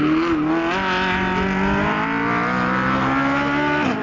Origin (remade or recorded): recorded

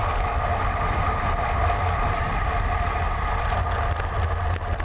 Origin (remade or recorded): recorded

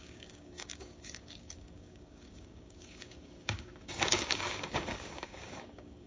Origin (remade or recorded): remade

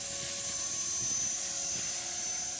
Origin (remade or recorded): recorded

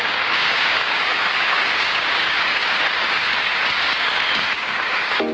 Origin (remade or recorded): remade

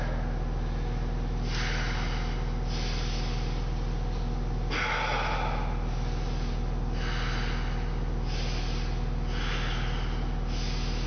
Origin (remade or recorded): recorded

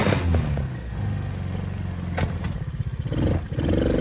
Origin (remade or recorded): recorded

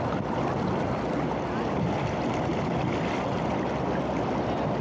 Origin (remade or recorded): recorded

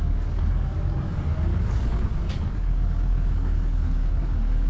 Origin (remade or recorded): remade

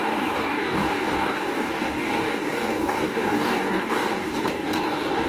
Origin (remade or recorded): remade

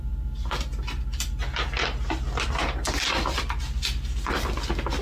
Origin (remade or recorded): recorded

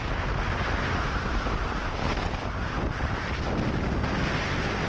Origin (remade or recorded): recorded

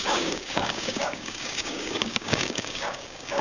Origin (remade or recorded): remade